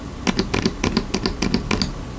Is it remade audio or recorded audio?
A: recorded